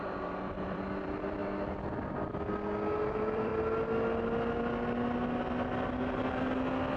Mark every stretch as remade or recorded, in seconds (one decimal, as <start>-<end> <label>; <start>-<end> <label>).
0.0-1.4 remade; 1.4-3.1 recorded; 3.1-3.5 remade; 3.5-7.0 recorded